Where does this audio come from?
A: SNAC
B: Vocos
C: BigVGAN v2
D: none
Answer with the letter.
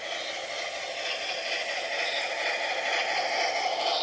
D